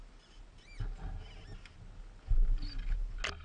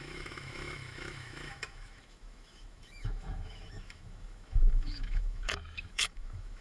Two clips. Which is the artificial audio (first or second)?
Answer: second